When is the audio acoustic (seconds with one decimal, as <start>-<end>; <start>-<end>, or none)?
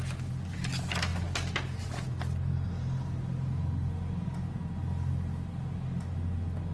0.0-6.7